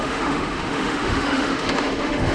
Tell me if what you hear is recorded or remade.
remade